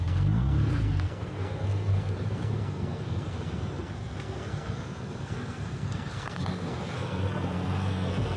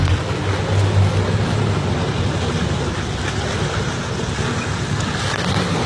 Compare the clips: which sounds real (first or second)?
second